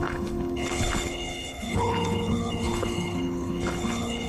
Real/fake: fake